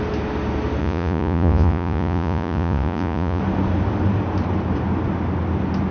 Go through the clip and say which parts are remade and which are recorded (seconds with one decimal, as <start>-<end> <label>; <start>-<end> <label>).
0.0-0.8 recorded; 0.8-3.4 remade; 3.4-5.9 recorded